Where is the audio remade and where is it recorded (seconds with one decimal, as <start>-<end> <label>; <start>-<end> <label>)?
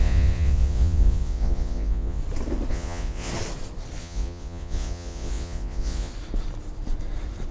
0.0-2.2 remade; 2.2-2.7 recorded; 2.7-3.3 remade; 3.3-4.0 recorded; 4.0-6.1 remade; 6.1-7.5 recorded